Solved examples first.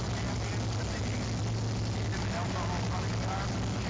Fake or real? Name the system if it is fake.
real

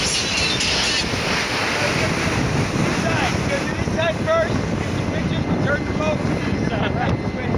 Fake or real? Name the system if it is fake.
real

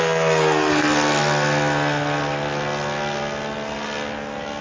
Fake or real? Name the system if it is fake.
real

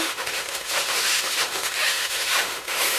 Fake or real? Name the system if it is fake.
fake, autoencoder, DAC-VAE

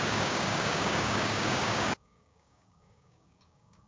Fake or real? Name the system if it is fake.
fake, codec, DAC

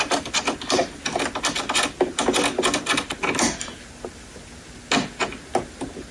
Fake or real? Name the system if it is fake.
real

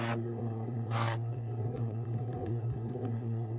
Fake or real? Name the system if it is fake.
fake, codec, SNAC